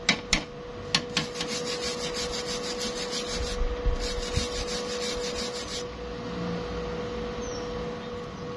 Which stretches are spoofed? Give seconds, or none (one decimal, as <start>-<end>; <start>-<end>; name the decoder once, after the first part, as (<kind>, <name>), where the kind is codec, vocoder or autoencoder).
none